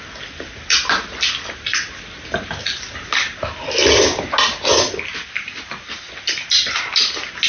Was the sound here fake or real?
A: real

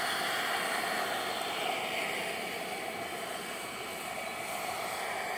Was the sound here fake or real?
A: real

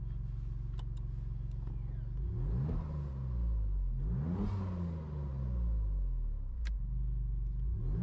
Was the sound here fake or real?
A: real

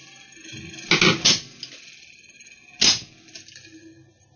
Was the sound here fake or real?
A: real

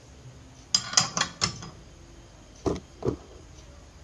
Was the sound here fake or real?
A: real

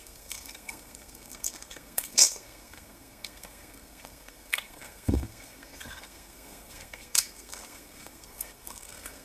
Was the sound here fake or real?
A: fake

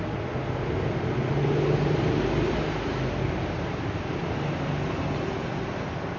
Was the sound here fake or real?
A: real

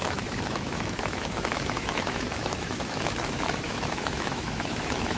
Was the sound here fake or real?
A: fake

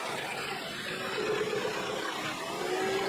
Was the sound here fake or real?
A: real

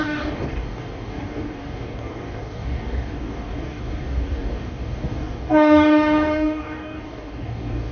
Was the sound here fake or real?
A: fake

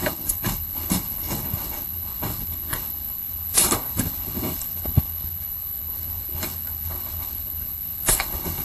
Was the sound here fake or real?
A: fake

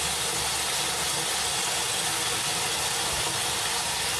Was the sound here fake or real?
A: real